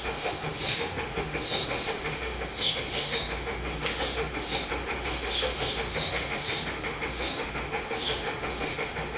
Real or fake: fake